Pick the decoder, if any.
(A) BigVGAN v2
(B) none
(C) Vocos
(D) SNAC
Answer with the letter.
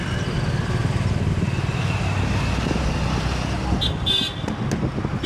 B